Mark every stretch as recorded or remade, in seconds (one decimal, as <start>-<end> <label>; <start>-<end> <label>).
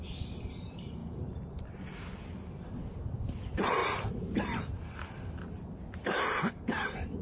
0.0-1.0 remade; 1.0-2.6 recorded; 2.6-3.8 remade; 3.8-5.1 recorded; 5.1-7.2 remade